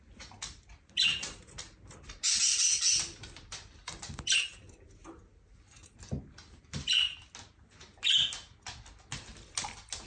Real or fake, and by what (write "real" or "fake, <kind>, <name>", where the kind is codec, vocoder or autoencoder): real